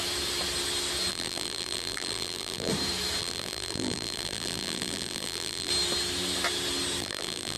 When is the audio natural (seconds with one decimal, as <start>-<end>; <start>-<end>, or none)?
0.0-1.1; 2.7-3.2; 5.7-7.0